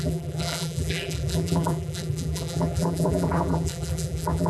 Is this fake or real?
fake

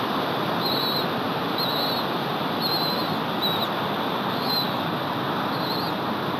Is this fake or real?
real